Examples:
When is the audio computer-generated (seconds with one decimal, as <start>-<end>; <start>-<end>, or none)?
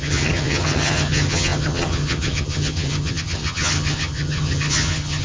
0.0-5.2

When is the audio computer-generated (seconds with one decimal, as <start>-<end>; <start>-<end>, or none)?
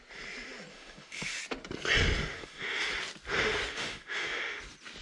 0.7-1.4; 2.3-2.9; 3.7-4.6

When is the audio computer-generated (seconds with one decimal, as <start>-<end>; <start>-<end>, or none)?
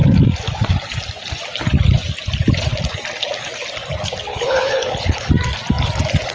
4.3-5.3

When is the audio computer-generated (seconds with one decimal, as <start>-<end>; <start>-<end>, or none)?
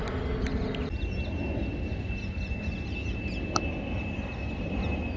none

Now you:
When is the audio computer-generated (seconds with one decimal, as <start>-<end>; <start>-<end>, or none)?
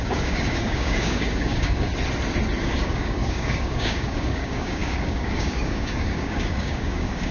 0.0-1.9; 2.6-7.3